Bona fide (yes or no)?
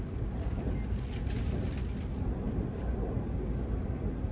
yes